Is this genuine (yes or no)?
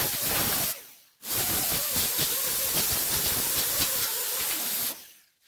yes